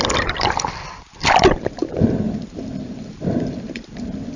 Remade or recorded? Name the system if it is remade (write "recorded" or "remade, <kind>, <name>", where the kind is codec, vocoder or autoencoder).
remade, vocoder, BigVGAN v2